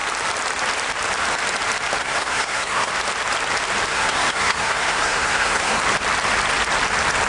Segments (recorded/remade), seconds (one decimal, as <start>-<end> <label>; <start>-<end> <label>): 0.0-2.0 recorded; 2.0-2.9 remade; 2.9-3.9 recorded; 3.9-5.8 remade; 5.8-7.3 recorded